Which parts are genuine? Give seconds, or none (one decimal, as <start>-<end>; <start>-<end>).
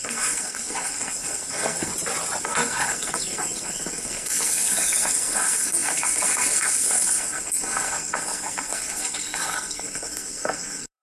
1.9-2.4